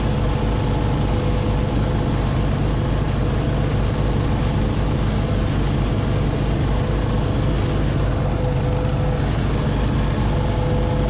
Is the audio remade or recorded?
recorded